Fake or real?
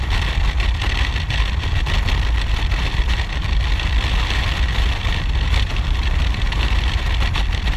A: fake